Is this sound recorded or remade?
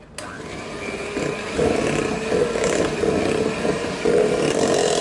recorded